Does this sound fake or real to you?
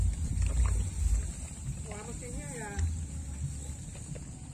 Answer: real